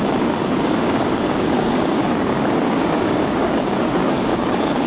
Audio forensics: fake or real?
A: fake